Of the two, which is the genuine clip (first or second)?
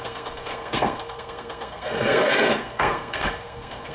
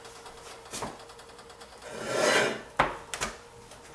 second